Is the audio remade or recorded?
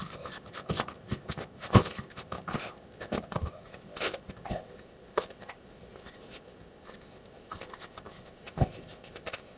remade